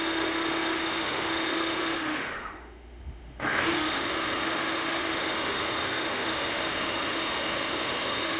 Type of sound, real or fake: fake